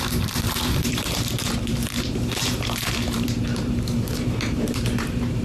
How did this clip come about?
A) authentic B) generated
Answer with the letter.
B